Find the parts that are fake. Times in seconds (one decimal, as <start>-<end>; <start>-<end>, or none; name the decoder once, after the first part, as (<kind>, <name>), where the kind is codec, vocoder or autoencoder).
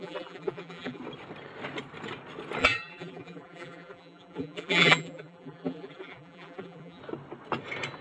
0.0-1.0 (vocoder, BigVGAN v2); 2.6-7.0